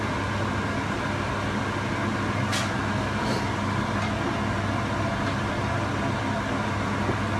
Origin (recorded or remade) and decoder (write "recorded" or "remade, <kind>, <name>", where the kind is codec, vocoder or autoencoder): recorded